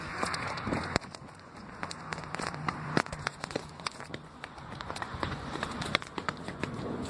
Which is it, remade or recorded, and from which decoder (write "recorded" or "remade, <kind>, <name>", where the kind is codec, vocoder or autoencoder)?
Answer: remade, vocoder, Vocos